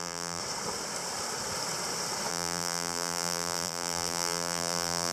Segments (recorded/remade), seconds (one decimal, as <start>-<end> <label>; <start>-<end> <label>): 0.0-0.4 remade; 0.4-2.3 recorded; 2.3-5.1 remade